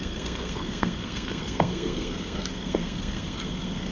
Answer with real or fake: fake